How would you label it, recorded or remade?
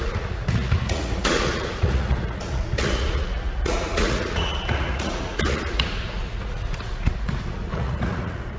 remade